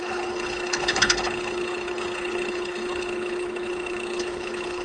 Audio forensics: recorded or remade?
remade